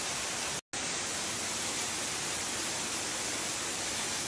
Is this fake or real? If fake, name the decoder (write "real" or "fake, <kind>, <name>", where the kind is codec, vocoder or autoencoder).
real